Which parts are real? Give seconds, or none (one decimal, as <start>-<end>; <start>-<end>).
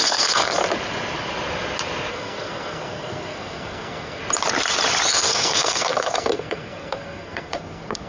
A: 0.6-2.1; 4.2-5.1